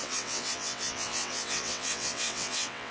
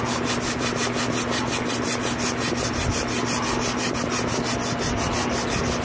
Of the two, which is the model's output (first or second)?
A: first